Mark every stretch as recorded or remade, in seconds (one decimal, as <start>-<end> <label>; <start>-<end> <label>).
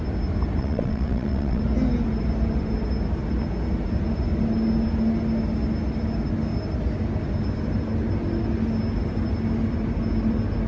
0.0-0.6 recorded; 0.6-1.6 remade; 1.6-10.7 recorded